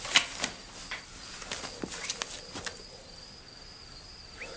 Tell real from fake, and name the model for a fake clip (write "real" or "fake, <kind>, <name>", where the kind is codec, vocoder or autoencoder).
real